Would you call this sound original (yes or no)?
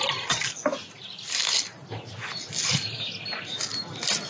yes